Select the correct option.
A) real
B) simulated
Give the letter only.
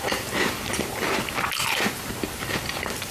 A